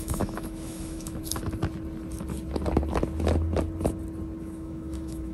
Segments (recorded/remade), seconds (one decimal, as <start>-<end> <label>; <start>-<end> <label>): 0.0-1.2 remade; 1.2-4.4 recorded; 4.4-5.3 remade

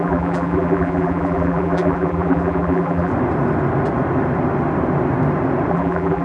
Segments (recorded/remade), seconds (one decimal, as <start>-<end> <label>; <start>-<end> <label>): 0.0-3.1 remade; 3.1-5.7 recorded; 5.7-6.2 remade

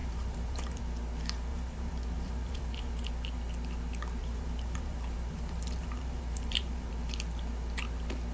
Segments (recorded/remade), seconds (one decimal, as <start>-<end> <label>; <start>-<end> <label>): 0.0-0.8 remade; 0.8-1.5 recorded; 1.5-3.1 remade; 3.1-4.2 recorded; 4.2-6.9 remade; 6.9-8.3 recorded